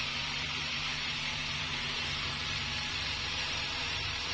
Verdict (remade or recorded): remade